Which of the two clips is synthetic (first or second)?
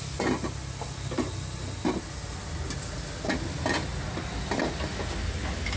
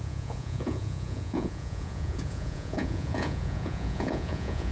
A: second